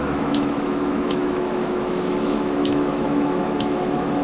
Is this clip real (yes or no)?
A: no